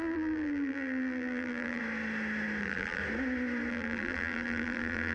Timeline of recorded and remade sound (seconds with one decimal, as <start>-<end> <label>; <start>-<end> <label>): 0.0-1.8 remade; 1.8-2.6 recorded; 2.6-3.0 remade; 3.0-3.7 recorded; 3.7-5.1 remade